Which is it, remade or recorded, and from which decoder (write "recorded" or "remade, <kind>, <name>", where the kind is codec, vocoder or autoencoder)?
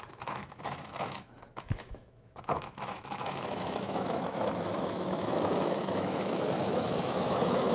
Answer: remade, autoencoder, DAC-VAE